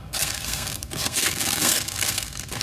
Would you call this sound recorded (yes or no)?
no